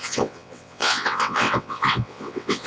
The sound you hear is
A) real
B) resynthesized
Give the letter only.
B